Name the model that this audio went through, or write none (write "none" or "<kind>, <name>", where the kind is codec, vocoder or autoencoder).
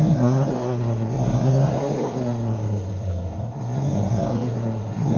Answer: codec, SNAC